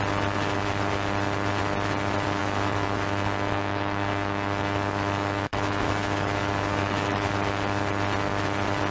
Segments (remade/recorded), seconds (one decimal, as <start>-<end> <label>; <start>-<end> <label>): 0.0-2.4 recorded; 2.4-7.3 remade; 7.3-8.9 recorded